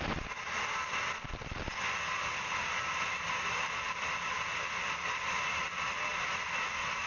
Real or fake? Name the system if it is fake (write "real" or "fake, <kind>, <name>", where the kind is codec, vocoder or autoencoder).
real